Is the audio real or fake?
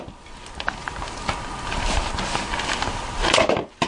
real